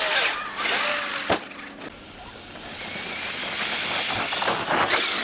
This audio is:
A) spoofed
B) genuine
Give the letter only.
B